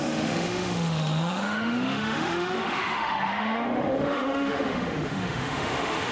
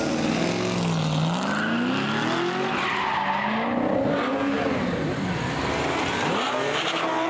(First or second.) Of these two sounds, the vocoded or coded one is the first